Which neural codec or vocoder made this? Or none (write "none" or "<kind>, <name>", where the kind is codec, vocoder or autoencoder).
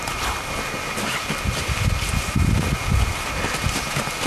none